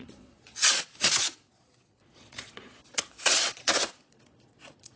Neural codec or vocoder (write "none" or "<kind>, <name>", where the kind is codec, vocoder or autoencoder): vocoder, Vocos